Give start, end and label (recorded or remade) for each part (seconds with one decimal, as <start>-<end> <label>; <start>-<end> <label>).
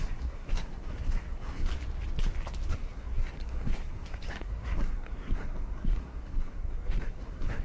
0.0-1.7 remade; 1.7-2.7 recorded; 2.7-7.6 remade